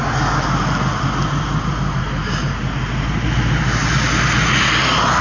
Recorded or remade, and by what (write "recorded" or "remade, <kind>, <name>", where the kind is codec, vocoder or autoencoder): recorded